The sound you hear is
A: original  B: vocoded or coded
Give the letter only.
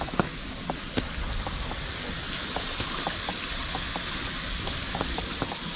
A